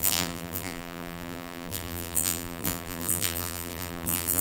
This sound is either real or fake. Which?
fake